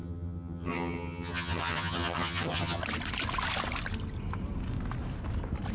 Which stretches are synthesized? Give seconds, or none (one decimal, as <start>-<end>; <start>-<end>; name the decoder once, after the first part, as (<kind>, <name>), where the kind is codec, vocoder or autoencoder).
0.0-2.8 (vocoder, HiFi-GAN)